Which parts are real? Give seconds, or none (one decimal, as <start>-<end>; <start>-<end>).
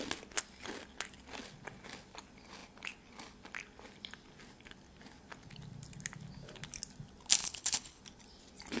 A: 0.0-7.4; 8.0-8.8